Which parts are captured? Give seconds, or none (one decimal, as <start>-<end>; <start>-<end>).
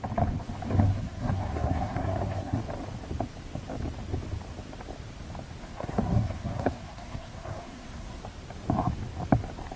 0.0-0.9; 2.6-5.6; 8.2-9.8